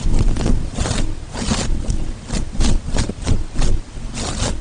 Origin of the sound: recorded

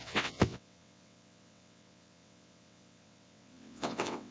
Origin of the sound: remade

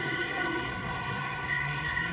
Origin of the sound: remade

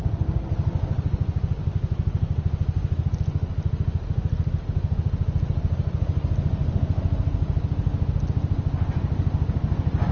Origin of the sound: recorded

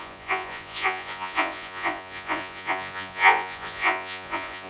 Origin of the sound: remade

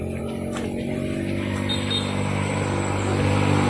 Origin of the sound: recorded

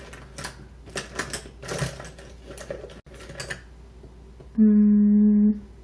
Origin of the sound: recorded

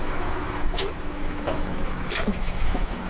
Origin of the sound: remade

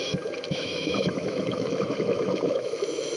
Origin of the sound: remade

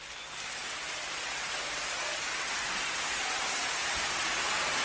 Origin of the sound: recorded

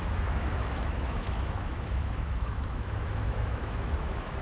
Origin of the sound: remade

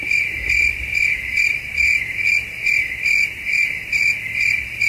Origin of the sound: recorded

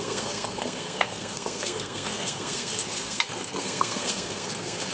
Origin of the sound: remade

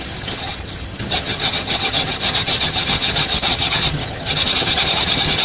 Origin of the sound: remade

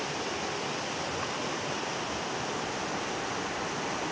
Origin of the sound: recorded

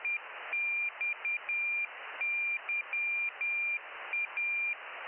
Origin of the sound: recorded